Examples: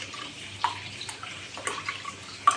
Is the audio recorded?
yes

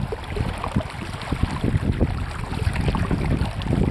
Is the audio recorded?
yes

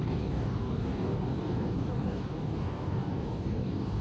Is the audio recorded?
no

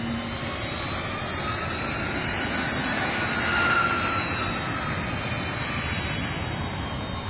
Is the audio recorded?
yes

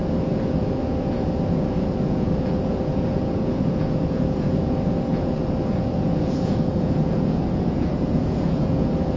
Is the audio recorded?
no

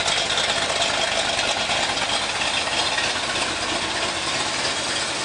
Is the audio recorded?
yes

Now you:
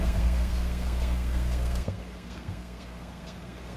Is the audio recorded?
no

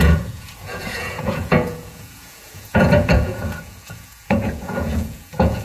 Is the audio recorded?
no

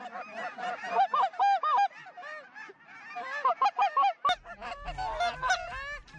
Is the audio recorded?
yes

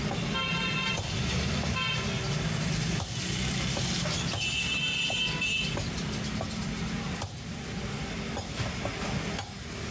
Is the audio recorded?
yes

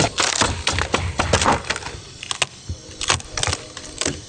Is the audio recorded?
yes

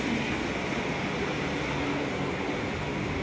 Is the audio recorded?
yes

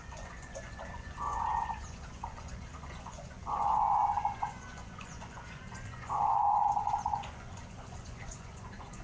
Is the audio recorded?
no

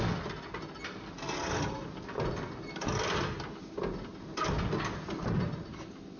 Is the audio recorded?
yes